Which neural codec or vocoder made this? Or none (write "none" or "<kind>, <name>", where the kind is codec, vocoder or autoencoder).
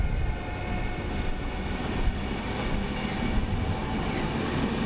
none